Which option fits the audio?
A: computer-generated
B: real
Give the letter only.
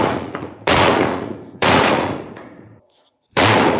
A